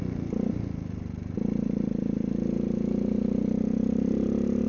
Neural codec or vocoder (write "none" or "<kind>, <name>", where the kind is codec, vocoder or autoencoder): vocoder, BigVGAN v2